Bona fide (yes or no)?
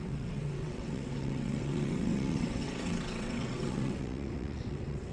no